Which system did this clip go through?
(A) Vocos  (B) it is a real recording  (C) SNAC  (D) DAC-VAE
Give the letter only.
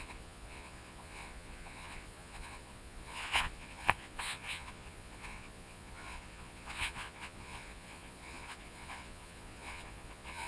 A